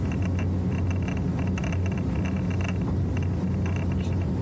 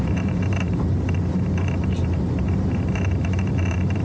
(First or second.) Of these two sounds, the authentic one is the first